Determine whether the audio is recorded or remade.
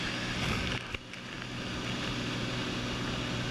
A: recorded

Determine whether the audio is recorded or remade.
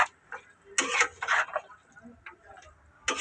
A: recorded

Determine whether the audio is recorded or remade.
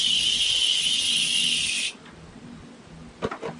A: recorded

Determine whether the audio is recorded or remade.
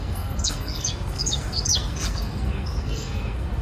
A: remade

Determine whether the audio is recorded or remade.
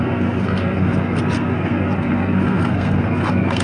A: remade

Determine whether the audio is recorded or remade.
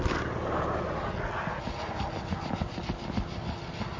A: recorded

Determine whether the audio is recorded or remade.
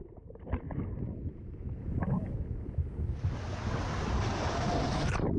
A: recorded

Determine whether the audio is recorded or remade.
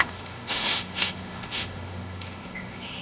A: remade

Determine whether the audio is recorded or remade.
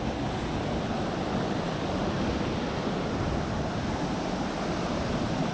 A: recorded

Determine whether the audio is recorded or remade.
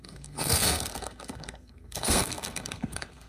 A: remade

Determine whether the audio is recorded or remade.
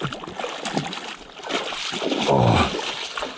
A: recorded